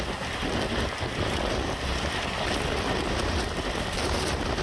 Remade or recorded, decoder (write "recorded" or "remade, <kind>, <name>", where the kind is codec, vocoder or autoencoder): recorded